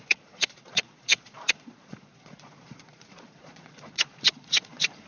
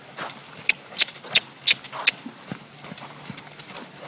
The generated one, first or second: first